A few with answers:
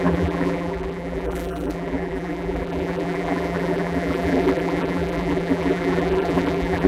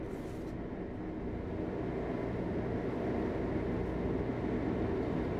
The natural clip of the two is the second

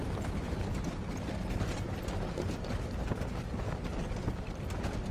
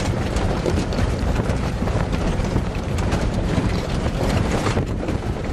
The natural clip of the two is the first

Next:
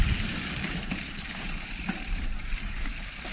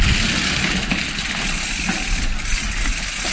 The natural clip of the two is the second